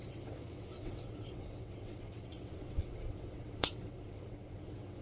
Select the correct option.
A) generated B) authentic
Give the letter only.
A